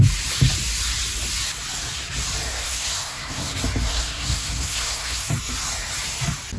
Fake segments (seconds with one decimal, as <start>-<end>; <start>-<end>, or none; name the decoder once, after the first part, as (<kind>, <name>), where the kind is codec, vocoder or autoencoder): 2.5-3.5 (codec, SNAC); 3.9-5.3